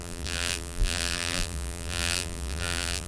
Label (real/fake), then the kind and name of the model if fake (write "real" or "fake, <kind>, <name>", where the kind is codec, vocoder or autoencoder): fake, vocoder, BigVGAN v2